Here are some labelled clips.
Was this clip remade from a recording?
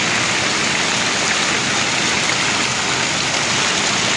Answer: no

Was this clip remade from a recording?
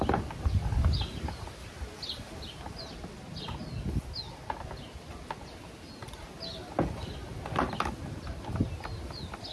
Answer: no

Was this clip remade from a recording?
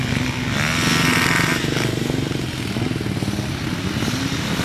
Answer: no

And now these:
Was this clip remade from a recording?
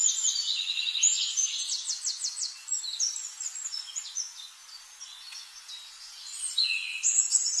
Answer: yes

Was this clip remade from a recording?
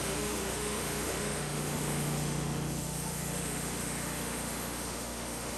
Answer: yes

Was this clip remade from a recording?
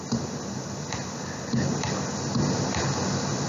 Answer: no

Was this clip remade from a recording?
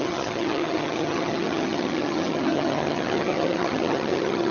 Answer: yes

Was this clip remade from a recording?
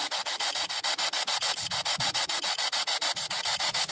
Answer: yes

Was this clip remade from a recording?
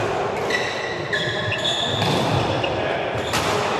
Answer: no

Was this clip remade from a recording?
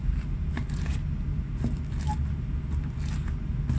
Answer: no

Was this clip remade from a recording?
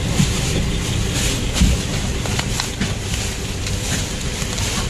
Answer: no